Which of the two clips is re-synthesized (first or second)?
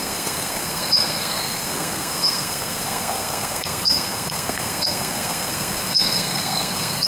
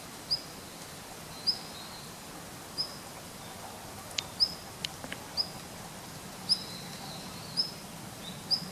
first